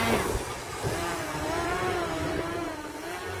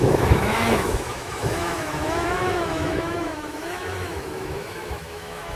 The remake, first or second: second